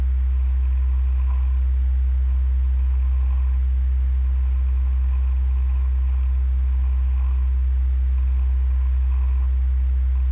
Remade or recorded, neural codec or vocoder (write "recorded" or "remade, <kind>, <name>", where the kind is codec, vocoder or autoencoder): recorded